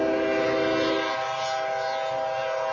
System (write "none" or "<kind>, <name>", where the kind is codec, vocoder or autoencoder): none